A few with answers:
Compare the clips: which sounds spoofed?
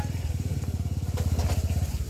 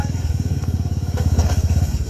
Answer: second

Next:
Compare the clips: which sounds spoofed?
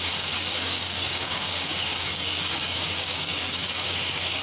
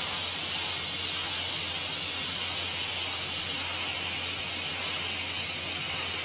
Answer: first